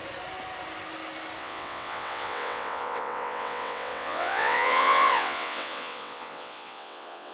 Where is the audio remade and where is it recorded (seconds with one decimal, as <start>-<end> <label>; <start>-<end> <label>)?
0.0-1.4 recorded; 1.4-7.3 remade